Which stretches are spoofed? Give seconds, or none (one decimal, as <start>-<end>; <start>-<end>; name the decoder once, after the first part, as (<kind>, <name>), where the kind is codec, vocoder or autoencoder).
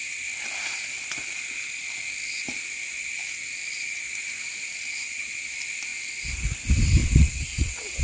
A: 7.0-8.0 (vocoder, WaveNeXt)